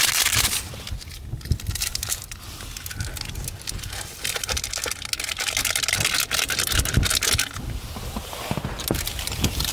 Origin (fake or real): real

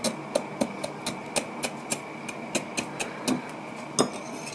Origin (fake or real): real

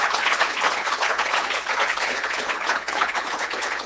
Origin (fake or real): fake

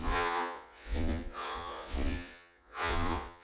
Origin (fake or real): fake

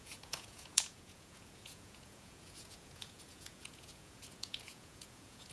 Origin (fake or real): fake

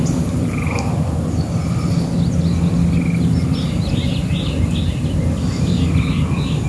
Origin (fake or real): real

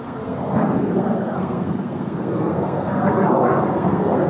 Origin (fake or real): fake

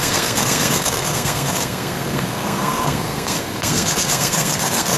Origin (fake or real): fake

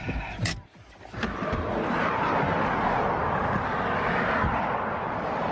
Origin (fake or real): real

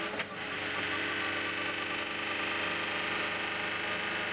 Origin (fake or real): real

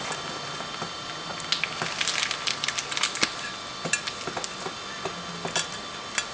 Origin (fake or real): real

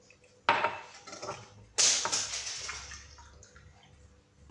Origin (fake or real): real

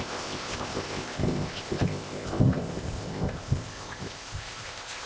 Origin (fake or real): fake